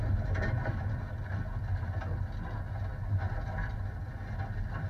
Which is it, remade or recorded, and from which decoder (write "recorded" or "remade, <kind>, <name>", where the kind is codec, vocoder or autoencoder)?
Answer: recorded